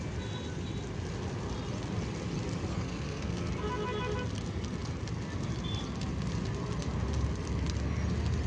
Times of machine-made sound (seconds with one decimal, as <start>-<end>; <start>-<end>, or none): 2.7-3.5